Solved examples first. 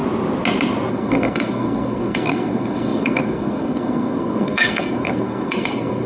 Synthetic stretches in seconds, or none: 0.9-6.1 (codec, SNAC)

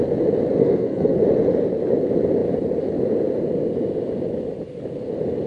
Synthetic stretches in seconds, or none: 0.6-1.2 (codec, SNAC)

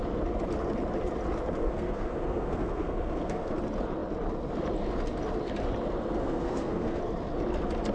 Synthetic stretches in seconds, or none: 1.6-3.5 (codec, SNAC); 6.2-7.0